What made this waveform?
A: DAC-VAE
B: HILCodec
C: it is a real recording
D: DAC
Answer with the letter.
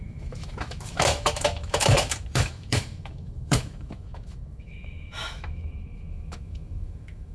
A